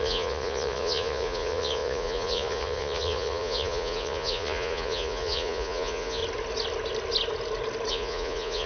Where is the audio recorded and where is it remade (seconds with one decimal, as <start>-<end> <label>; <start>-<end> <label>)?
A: 0.0-6.2 remade; 6.2-7.9 recorded; 7.9-8.7 remade